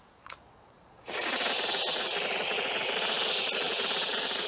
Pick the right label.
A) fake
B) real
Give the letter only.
A